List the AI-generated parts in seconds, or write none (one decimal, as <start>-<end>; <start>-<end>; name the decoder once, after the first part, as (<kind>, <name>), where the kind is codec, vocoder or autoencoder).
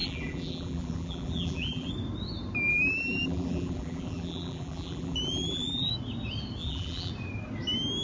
0.0-1.9 (vocoder, BigVGAN v2); 2.7-5.9; 6.6-7.1